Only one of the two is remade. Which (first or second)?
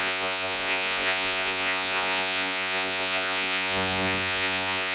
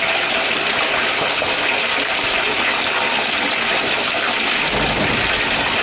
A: first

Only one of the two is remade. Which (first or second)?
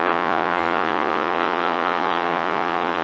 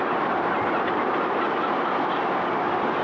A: first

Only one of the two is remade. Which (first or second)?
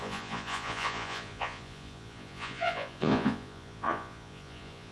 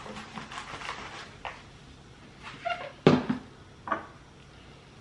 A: first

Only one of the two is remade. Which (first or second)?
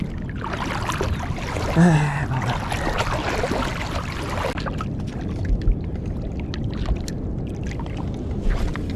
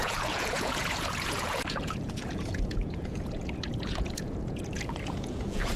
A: second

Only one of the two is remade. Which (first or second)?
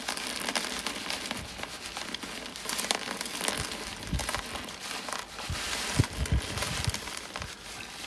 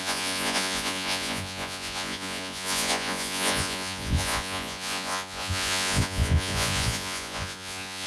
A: second